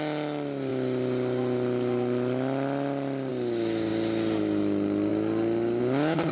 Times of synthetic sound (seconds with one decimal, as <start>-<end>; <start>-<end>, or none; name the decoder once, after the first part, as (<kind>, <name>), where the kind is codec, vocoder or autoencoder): none